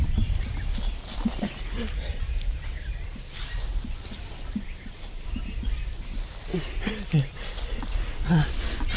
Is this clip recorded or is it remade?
recorded